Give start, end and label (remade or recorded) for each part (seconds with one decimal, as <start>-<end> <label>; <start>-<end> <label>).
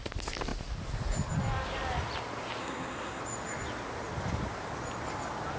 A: 0.0-2.6 recorded; 2.6-3.2 remade; 3.2-5.6 recorded